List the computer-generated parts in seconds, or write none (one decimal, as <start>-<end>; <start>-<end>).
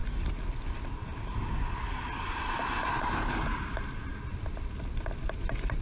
none